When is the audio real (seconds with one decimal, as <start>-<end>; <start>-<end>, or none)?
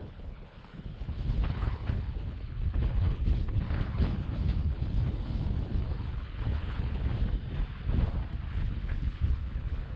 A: 7.1-8.5